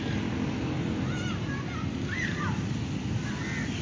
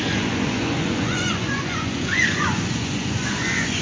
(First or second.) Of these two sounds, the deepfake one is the second